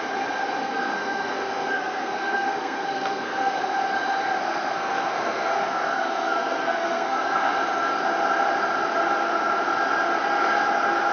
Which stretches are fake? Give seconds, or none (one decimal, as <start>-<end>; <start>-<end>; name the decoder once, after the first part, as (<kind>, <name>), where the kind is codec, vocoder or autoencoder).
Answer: 0.6-3.6 (codec, SNAC); 4.4-7.5